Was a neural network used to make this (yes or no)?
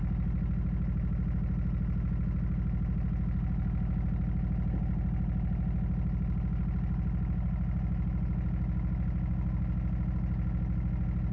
no